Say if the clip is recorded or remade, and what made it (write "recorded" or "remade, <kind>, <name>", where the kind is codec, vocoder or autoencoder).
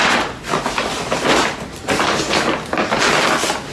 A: recorded